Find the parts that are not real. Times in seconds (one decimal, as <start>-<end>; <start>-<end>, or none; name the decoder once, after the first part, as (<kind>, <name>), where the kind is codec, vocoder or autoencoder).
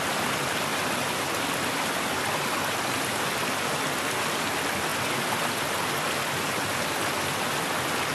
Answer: none